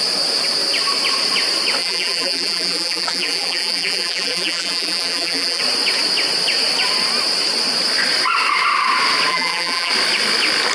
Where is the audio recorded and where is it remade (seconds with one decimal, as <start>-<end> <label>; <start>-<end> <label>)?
0.0-1.8 recorded; 1.8-5.6 remade; 5.6-9.3 recorded; 9.3-9.9 remade; 9.9-10.7 recorded